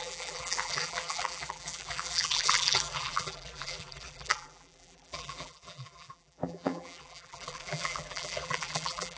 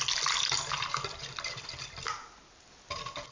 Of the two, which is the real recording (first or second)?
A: second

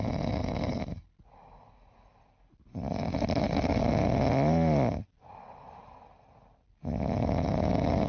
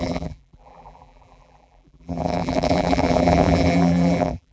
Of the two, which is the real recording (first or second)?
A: first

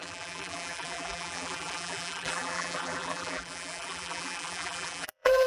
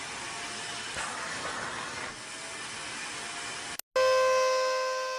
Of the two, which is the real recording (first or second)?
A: second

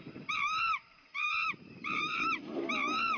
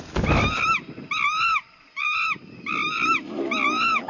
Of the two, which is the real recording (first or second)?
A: second